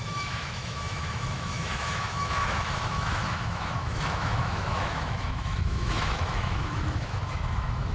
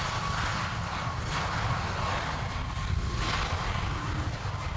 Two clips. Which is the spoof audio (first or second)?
first